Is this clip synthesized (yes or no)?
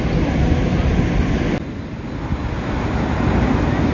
no